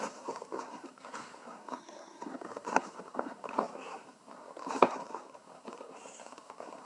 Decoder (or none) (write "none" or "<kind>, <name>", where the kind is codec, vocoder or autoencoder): codec, SNAC